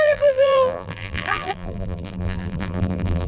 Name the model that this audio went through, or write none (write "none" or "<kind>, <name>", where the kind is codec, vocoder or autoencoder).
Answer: vocoder, BigVGAN v2